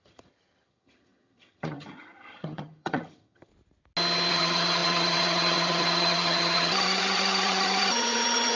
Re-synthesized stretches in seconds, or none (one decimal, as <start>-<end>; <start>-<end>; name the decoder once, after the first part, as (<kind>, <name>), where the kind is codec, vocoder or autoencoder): 0.0-3.5 (vocoder, HiFi-GAN); 4.3-8.5